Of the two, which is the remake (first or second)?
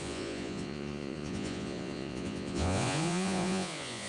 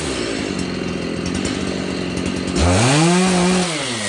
first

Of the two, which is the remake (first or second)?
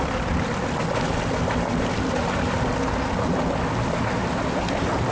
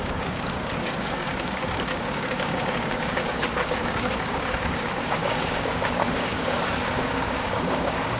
second